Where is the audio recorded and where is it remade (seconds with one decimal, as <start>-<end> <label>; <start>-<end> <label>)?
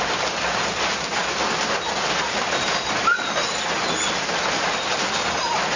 0.0-5.8 recorded